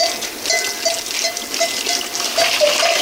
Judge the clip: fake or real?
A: real